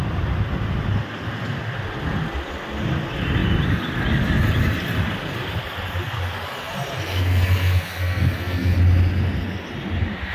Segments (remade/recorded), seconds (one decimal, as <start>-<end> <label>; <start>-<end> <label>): 0.0-7.1 recorded; 7.1-8.8 remade; 8.8-10.3 recorded